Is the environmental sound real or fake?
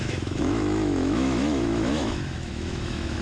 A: fake